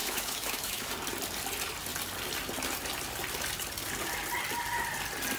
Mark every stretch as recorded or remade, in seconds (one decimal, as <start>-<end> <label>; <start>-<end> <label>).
0.0-0.9 remade; 0.9-5.4 recorded